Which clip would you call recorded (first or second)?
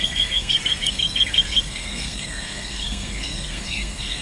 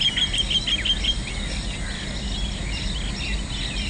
second